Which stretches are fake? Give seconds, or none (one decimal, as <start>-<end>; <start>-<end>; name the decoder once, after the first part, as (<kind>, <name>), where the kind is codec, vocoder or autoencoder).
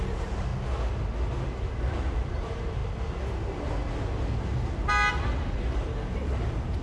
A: 0.0-0.5 (vocoder, BigVGAN v2); 1.7-2.8; 5.7-6.8